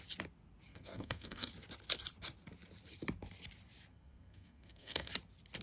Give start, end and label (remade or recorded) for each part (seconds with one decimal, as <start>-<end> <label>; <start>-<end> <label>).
0.0-0.7 recorded; 0.7-1.5 remade; 1.5-3.9 recorded; 3.9-5.1 remade; 5.1-5.6 recorded